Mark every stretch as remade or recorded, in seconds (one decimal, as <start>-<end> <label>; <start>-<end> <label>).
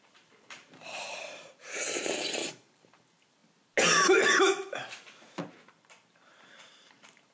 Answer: 0.0-3.4 remade; 3.4-5.5 recorded; 5.5-7.3 remade